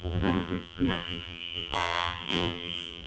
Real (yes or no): no